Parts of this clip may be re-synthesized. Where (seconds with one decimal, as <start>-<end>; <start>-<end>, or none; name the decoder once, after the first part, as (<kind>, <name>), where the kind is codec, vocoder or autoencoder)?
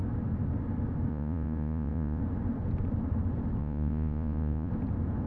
1.1-2.2 (vocoder, Vocos); 3.6-4.7